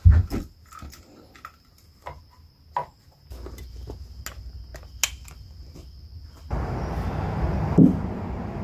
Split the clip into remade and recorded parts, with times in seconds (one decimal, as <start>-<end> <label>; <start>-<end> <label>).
0.0-8.6 recorded